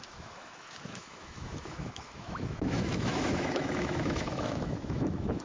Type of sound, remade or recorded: remade